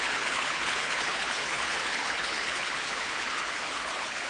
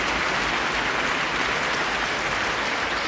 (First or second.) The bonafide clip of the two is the second